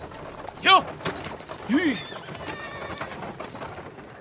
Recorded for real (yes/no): yes